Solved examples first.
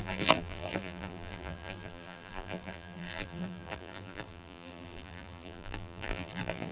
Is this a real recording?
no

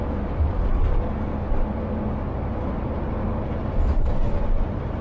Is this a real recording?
yes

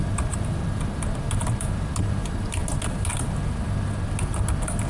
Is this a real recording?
yes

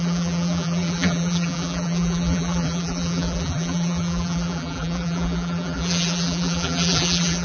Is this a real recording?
no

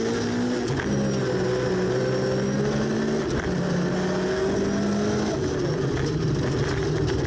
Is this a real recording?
yes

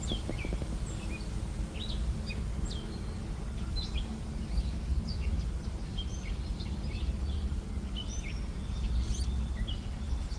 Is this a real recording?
yes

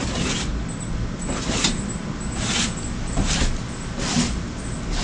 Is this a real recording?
yes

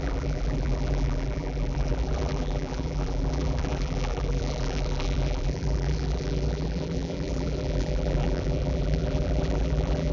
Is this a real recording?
no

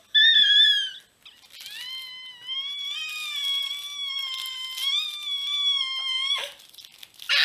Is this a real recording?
yes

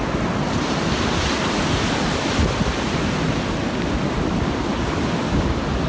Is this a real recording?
yes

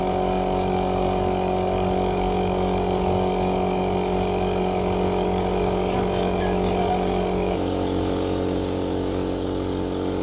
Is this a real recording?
no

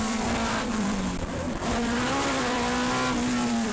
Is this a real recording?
no